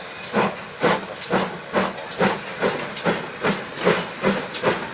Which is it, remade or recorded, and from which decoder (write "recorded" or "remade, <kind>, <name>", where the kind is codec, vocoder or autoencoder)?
recorded